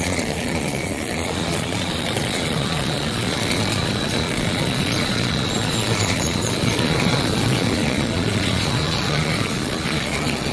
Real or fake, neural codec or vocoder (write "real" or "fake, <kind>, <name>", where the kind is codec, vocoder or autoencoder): fake, vocoder, Vocos